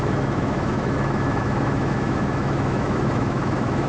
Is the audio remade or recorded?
remade